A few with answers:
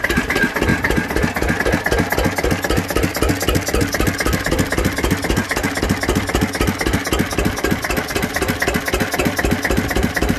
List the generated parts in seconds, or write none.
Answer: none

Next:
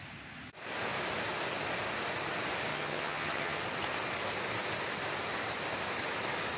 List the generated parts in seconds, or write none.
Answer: 2.7-3.6 (vocoder, HiFi-GAN)

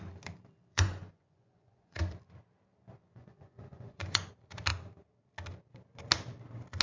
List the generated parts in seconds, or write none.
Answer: 0.7-2.0 (vocoder, Vocos); 3.0-4.3